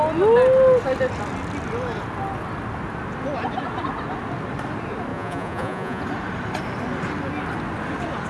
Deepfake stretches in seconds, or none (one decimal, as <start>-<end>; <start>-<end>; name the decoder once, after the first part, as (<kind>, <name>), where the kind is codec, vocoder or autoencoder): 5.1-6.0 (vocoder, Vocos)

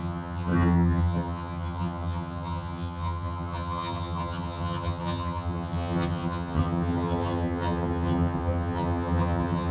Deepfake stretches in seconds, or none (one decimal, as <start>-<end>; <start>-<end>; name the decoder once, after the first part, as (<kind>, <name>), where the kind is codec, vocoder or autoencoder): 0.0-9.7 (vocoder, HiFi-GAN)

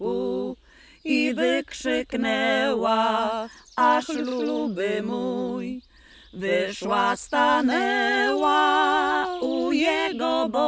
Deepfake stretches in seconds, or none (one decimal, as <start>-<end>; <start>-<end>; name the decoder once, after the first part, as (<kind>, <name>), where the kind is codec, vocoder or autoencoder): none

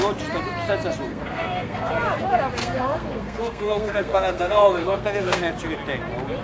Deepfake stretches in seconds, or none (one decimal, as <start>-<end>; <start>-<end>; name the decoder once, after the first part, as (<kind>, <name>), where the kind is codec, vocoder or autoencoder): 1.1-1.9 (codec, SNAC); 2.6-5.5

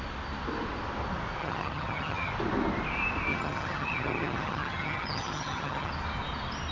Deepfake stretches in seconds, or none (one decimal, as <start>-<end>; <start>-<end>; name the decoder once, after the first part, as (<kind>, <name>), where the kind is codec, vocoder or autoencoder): 1.4-2.3 (vocoder, HiFi-GAN); 3.3-5.9

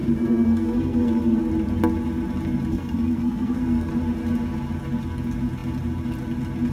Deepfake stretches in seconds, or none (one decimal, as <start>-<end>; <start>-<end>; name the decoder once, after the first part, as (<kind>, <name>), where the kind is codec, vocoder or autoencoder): 0.0-1.5 (codec, SNAC); 2.7-3.9